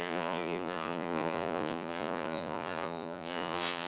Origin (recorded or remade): remade